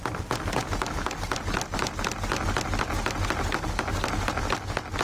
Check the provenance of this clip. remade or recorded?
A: recorded